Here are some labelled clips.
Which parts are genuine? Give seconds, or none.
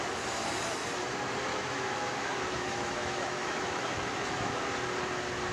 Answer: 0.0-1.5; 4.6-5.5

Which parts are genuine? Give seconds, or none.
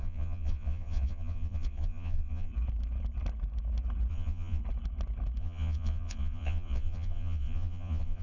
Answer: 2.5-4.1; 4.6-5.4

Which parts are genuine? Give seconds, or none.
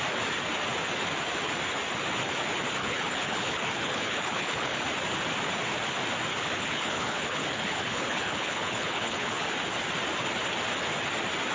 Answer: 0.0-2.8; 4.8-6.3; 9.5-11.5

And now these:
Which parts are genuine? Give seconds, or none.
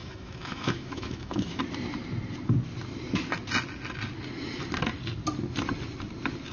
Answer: 1.6-6.5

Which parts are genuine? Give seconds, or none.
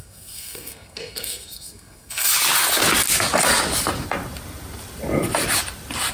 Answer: 2.3-6.1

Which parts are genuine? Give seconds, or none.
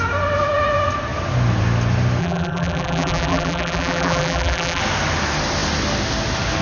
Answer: 0.0-2.2; 4.8-6.6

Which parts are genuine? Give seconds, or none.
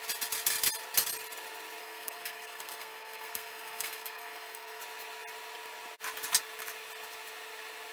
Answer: 0.0-1.8; 4.8-7.9